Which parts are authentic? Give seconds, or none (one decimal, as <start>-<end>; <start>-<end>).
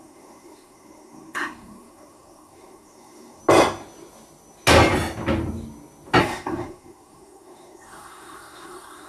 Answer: 3.4-6.2